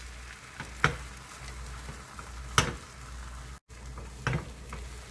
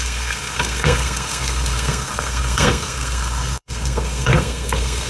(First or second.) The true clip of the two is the first